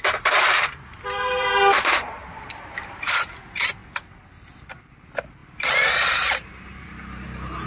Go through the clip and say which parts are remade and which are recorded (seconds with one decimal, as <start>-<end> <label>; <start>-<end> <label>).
0.0-3.8 remade; 3.8-4.8 recorded; 4.8-7.7 remade

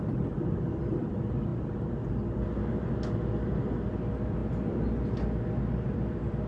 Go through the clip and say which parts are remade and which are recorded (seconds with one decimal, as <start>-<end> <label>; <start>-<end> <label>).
0.0-6.5 recorded